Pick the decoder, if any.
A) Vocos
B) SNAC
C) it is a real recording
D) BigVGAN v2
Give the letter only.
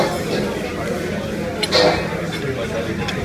C